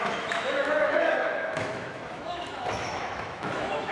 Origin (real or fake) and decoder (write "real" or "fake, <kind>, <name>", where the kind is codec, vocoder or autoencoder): fake, autoencoder, DAC-VAE